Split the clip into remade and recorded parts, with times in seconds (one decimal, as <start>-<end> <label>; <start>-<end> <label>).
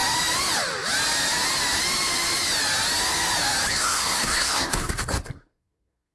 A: 0.0-3.7 recorded; 3.7-6.1 remade